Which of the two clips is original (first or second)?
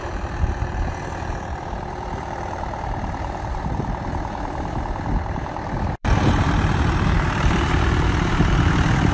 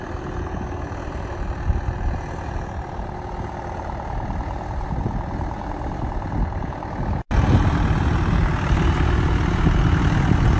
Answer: second